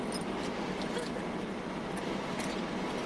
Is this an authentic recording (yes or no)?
no